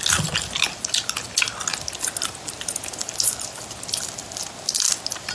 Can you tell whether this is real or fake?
real